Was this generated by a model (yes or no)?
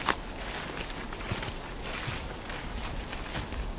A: no